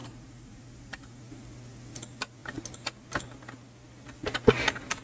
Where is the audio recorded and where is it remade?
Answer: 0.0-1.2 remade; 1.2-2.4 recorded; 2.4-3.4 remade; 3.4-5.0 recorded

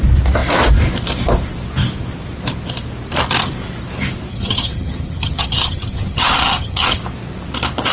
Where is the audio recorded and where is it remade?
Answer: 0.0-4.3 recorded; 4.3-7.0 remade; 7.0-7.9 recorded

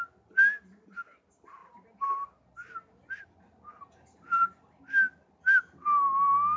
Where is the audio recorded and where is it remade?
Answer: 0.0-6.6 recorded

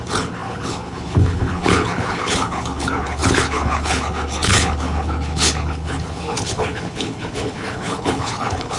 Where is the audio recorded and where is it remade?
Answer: 0.0-8.8 remade

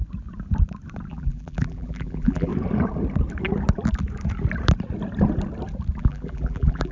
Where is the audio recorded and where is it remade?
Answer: 0.0-1.1 recorded; 1.1-2.5 remade; 2.5-6.0 recorded; 6.0-6.9 remade

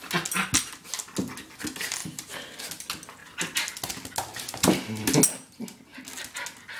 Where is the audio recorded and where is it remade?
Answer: 0.0-6.8 recorded